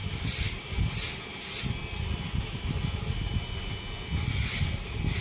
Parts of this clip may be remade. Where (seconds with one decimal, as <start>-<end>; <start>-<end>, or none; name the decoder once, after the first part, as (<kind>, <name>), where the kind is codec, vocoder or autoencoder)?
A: none